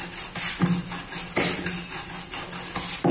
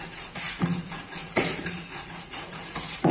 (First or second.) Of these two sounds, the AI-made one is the second